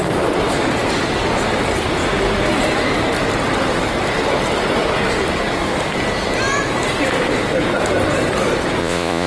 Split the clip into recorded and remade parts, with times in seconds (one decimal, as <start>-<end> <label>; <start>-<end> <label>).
0.0-8.8 recorded; 8.8-9.3 remade